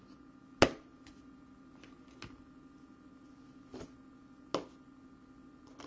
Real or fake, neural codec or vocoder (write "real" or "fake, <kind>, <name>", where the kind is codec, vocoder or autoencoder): real